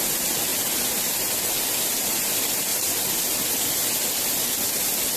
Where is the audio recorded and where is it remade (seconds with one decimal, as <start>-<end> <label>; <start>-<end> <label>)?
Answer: 0.0-5.2 recorded

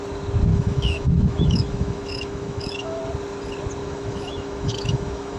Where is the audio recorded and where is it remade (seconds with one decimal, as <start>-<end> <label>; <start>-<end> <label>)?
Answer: 0.0-0.5 recorded; 0.5-3.0 remade; 3.0-3.8 recorded; 3.8-5.4 remade

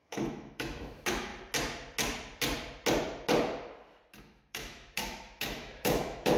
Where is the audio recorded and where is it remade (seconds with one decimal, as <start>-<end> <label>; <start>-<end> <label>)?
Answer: 0.0-1.3 remade; 1.3-4.2 recorded; 4.2-6.4 remade

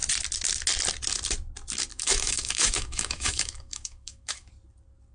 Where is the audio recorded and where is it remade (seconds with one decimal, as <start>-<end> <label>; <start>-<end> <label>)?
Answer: 0.0-1.9 recorded; 1.9-4.5 remade; 4.5-5.1 recorded

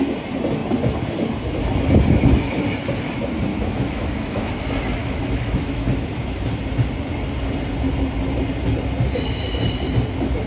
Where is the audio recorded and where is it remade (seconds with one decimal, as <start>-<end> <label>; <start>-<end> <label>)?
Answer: 0.0-3.5 recorded; 3.5-4.5 remade; 4.5-5.0 recorded; 5.0-6.4 remade; 6.4-10.5 recorded

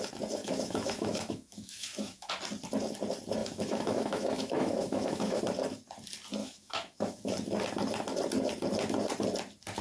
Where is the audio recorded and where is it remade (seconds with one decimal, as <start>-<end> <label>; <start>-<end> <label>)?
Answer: 0.0-0.4 recorded; 0.4-2.3 remade; 2.3-3.4 recorded; 3.4-5.4 remade; 5.4-6.4 recorded; 6.4-7.3 remade; 7.3-9.8 recorded